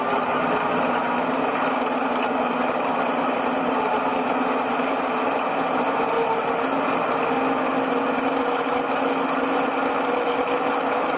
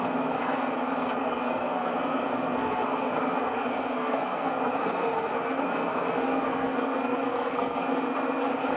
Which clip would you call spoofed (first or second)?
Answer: second